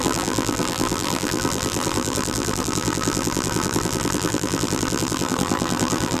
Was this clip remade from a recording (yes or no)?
yes